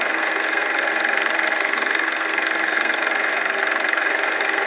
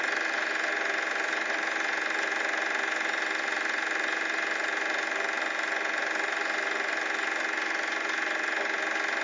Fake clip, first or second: first